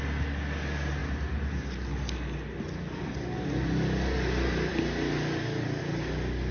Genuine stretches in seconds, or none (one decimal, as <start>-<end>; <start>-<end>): 0.0-6.5